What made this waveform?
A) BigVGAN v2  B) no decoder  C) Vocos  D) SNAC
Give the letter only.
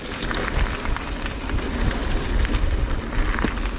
B